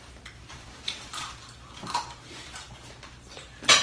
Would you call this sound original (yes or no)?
no